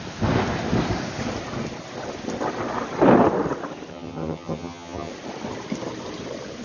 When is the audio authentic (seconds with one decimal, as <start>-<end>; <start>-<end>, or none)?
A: 0.0-3.9; 5.1-6.6